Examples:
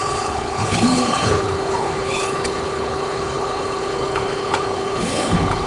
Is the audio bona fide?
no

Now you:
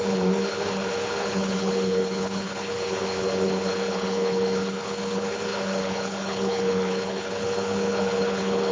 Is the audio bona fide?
no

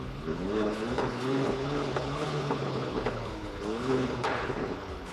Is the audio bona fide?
no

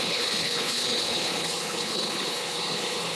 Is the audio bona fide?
no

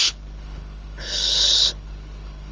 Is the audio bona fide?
no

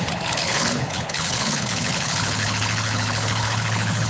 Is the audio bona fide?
no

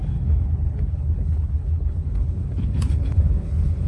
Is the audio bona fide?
no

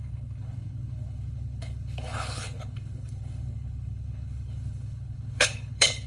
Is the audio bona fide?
no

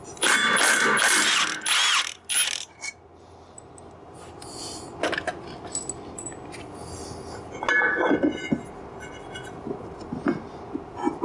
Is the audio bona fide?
yes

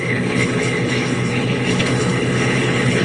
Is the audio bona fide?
no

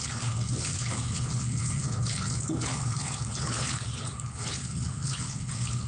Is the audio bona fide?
no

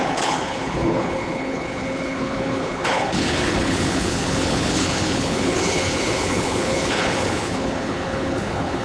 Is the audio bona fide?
no